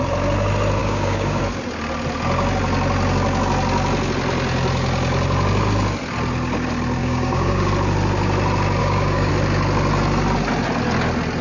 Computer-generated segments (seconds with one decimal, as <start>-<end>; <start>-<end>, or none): 0.8-1.4; 7.0-7.7; 8.8-9.3